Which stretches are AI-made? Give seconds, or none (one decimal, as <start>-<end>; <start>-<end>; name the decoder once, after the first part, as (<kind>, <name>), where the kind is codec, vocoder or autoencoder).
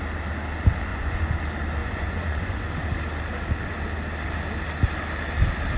0.9-1.4 (vocoder, Vocos); 1.8-2.6